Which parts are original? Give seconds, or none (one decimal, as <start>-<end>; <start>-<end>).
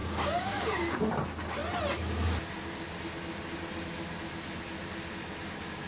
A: 1.0-5.9